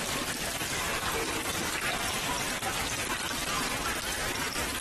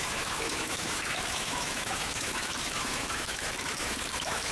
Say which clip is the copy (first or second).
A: second